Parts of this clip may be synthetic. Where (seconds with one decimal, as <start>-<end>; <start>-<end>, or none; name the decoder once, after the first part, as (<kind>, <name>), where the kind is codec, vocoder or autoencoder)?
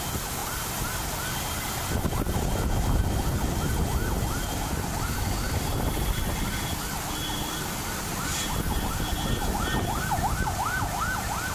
none